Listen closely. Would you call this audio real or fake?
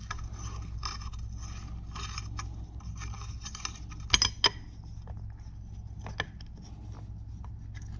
real